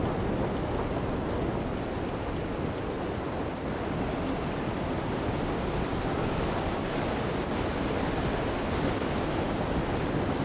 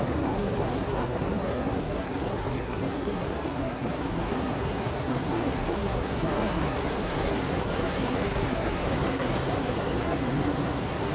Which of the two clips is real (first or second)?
first